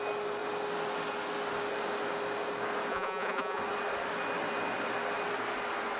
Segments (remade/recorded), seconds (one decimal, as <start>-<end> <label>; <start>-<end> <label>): 0.0-2.9 recorded; 2.9-3.6 remade; 3.6-6.0 recorded